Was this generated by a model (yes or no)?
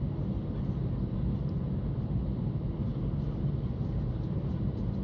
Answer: no